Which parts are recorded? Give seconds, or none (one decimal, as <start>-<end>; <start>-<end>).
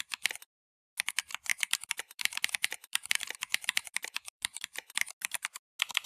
0.0-1.5; 5.2-6.1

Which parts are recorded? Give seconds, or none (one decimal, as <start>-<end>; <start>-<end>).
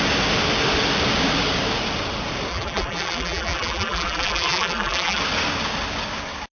0.0-2.5; 5.2-6.6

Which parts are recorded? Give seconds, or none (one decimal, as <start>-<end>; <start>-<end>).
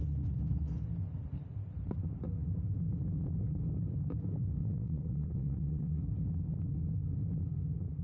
0.0-4.6; 6.0-8.0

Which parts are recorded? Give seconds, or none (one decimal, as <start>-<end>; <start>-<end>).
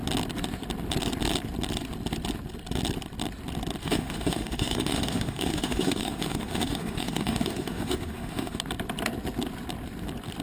0.0-3.8; 8.6-10.4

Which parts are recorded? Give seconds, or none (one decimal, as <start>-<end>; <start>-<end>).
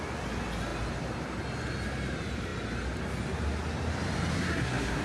0.0-4.3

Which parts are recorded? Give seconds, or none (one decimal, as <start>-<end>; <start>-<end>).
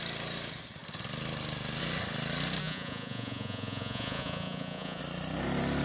0.0-2.6; 5.0-5.8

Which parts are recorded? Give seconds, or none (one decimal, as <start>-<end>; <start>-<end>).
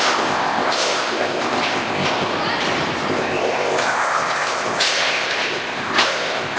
2.3-3.1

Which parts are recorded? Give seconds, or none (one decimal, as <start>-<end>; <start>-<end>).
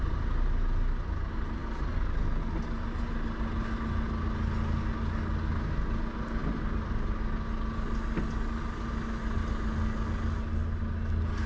0.0-11.5